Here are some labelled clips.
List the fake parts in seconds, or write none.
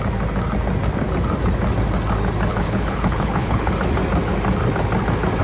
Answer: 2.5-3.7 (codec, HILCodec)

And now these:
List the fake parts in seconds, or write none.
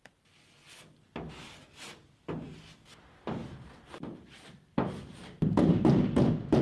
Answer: none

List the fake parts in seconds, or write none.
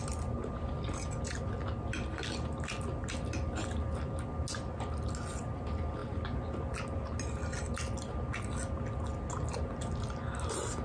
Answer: none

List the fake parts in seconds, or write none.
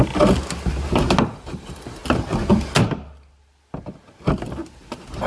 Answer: 1.2-2.0 (vocoder, BigVGAN v2)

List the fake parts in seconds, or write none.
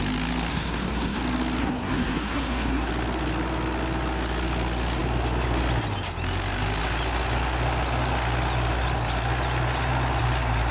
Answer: 0.5-1.2 (codec, SNAC); 1.6-2.9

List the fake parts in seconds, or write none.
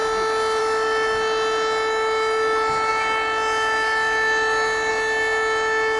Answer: none